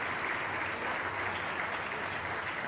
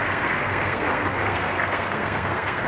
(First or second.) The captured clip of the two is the first